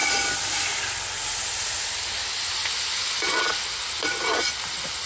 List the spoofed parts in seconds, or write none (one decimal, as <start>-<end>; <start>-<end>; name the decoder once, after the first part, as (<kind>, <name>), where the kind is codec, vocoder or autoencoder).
none